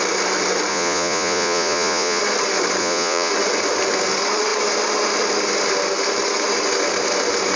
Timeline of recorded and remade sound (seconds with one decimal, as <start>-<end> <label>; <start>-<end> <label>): 0.0-0.7 recorded; 0.7-2.2 remade; 2.2-2.8 recorded; 2.8-3.3 remade; 3.3-7.6 recorded